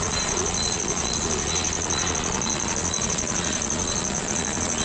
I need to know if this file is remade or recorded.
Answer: remade